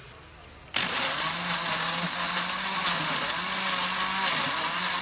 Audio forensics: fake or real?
real